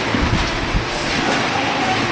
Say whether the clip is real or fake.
real